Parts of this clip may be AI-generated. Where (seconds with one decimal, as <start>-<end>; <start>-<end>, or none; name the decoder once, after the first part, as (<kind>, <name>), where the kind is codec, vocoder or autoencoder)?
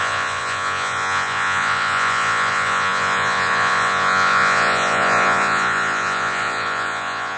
0.0-7.4 (vocoder, Vocos)